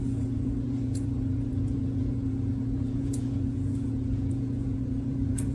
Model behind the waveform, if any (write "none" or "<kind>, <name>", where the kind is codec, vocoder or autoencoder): vocoder, Vocos